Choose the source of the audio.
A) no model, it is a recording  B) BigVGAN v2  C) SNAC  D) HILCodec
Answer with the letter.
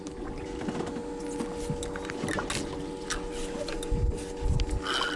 A